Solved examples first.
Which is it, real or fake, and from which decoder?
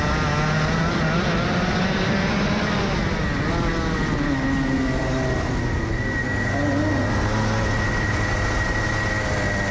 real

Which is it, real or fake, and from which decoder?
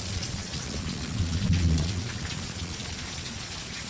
fake, vocoder, Vocos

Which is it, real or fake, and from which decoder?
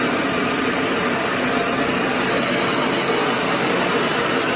real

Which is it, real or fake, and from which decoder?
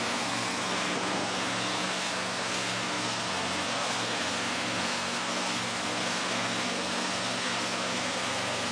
fake, codec, SNAC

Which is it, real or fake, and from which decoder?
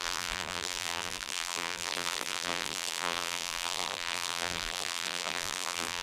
fake, vocoder, BigVGAN v2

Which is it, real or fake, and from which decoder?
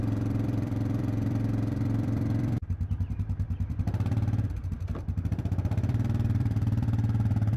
fake, vocoder, BigVGAN v2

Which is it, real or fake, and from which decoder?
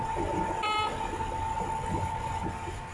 real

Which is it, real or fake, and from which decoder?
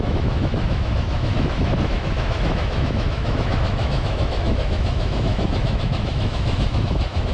fake, autoencoder, DAC-VAE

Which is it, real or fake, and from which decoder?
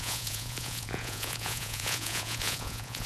fake, vocoder, Vocos